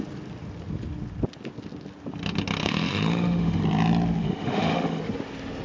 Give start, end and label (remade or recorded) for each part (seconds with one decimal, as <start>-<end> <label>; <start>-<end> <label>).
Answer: 0.0-2.6 recorded; 2.6-3.6 remade; 3.6-4.2 recorded; 4.2-5.0 remade; 5.0-5.6 recorded